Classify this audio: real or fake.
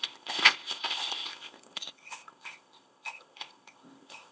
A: fake